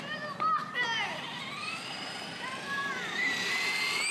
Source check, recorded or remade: recorded